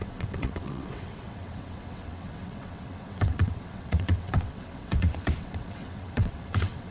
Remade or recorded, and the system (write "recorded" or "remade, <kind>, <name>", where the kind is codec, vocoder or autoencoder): remade, vocoder, WaveNeXt